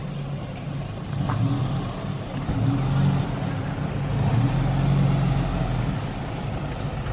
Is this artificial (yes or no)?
no